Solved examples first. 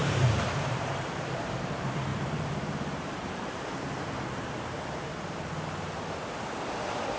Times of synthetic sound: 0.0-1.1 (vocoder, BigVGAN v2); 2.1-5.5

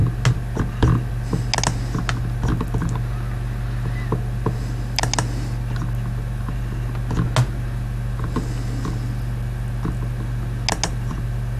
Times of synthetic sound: none

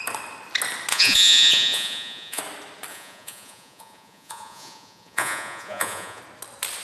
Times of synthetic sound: 0.9-2.4 (vocoder, Vocos); 2.9-6.2

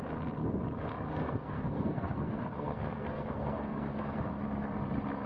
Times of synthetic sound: 1.2-4.4 (codec, SNAC)

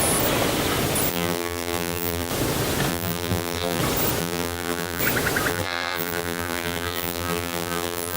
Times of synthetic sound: 1.1-2.3 (vocoder, BigVGAN v2); 2.9-3.8; 4.2-5.0; 5.5-8.2

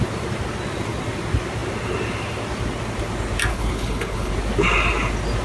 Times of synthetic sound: 3.5-4.3 (codec, HILCodec)

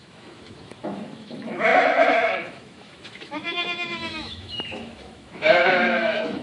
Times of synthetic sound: 0.0-6.4 (autoencoder, DAC-VAE)